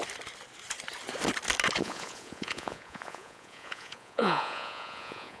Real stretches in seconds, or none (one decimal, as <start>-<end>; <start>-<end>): 0.0-1.8